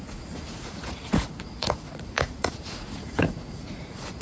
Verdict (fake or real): fake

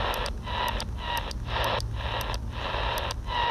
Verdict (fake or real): real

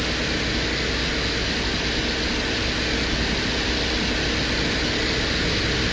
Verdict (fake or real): real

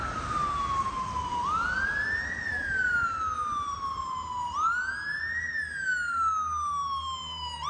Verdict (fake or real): real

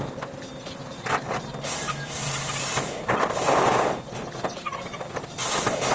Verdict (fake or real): real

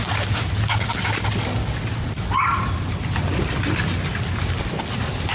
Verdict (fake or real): real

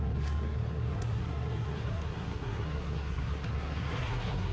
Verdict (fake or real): fake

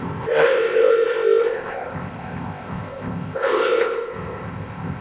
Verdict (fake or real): fake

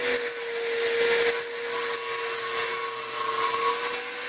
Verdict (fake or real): real